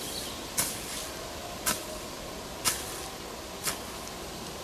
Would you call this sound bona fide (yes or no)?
yes